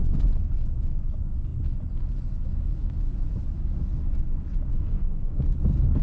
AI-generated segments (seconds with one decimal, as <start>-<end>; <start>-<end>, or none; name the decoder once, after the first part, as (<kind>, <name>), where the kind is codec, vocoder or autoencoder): 4.7-5.4 (codec, SNAC)